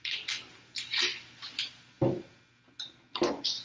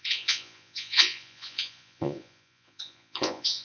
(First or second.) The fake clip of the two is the second